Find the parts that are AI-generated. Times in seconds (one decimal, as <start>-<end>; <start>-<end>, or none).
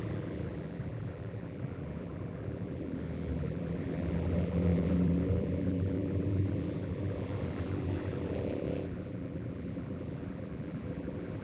0.0-11.4